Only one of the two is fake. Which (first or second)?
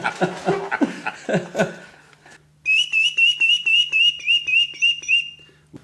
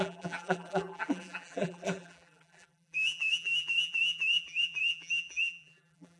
second